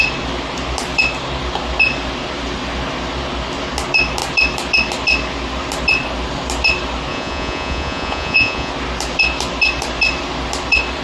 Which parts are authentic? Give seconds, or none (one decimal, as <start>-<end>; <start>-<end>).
0.0-7.1; 8.7-11.0